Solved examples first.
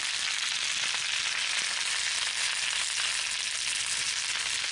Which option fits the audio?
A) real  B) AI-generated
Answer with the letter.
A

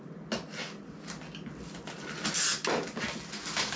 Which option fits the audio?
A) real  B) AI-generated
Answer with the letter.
A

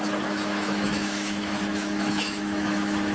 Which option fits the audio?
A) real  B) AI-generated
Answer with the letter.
B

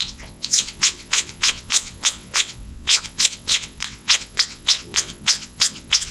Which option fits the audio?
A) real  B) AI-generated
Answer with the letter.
B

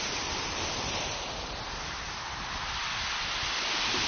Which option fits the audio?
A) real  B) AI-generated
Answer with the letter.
A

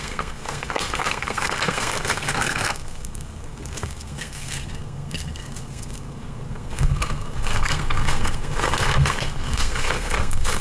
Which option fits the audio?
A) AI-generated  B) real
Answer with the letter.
A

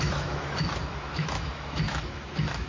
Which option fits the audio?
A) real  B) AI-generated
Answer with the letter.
B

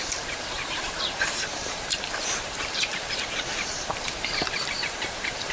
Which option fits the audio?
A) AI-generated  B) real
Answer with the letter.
A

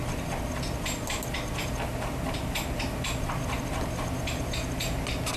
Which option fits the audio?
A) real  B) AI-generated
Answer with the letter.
A